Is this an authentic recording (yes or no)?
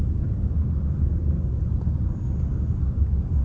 yes